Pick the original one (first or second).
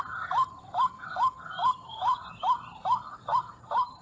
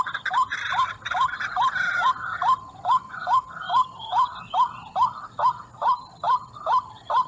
second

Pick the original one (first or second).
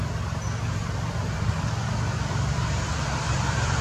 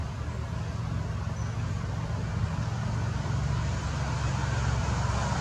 second